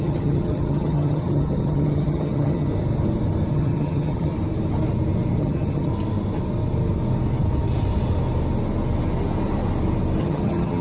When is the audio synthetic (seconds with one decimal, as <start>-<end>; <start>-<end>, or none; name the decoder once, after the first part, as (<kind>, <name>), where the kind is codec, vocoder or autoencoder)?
0.0-2.7 (vocoder, HiFi-GAN); 3.5-4.3; 5.4-5.9; 10.2-10.8